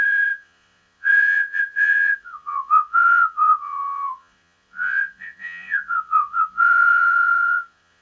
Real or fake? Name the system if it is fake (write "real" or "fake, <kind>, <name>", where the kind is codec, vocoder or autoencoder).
fake, vocoder, Vocos